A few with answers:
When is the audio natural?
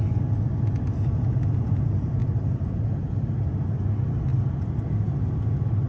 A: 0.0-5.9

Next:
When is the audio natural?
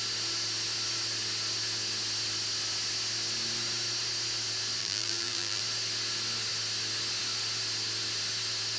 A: 0.0-4.8; 5.6-8.8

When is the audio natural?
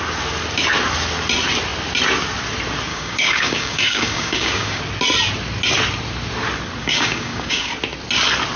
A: 0.0-2.9; 4.8-6.8; 7.7-8.6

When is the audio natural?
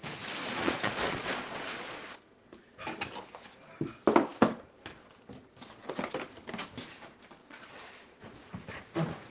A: 0.0-0.4; 2.2-7.4; 8.4-9.3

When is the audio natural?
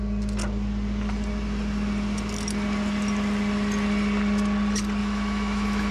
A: 0.0-5.0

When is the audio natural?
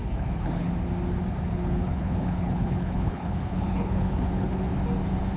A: 0.7-1.5; 4.7-5.4